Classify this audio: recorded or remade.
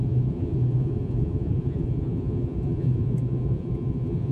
remade